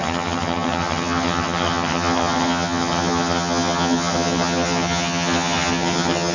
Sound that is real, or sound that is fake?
fake